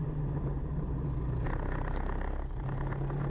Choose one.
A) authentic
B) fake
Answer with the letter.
A